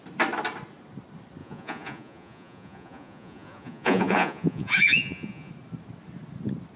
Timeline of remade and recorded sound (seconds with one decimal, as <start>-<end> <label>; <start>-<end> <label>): 0.0-1.4 recorded; 1.4-5.5 remade; 5.5-6.8 recorded